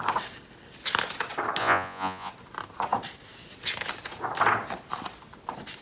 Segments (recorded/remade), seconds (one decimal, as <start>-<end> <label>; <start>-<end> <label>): 0.0-1.6 recorded; 1.6-2.3 remade; 2.3-5.8 recorded